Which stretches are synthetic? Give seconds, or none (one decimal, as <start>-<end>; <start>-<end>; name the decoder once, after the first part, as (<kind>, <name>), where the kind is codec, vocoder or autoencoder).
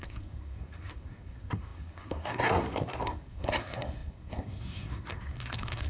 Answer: 0.0-5.9 (codec, SNAC)